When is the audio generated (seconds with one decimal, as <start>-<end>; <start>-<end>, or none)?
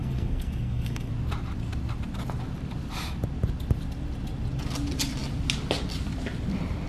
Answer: 0.0-1.1